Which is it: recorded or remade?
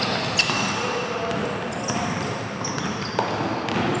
recorded